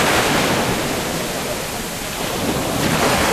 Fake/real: real